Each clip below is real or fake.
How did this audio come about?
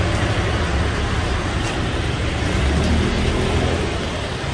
real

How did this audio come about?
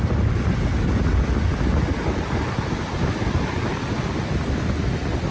real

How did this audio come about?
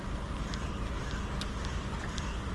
real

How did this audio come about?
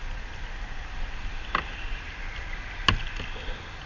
real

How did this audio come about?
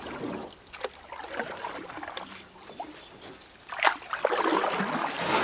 real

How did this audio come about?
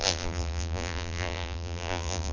fake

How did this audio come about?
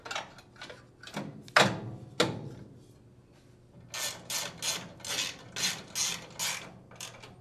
real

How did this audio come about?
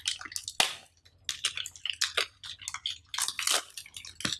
real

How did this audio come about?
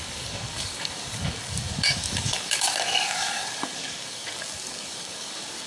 fake